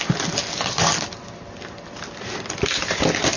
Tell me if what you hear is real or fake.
real